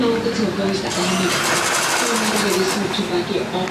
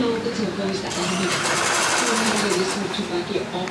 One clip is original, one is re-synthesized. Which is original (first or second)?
first